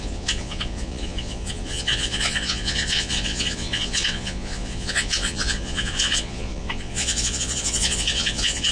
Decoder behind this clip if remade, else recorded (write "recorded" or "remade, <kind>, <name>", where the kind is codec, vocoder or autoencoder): remade, vocoder, Vocos